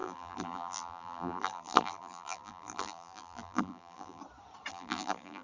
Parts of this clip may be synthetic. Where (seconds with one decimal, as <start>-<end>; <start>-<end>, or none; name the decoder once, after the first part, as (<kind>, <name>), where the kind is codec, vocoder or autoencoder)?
0.0-4.2 (vocoder, BigVGAN v2); 4.7-5.4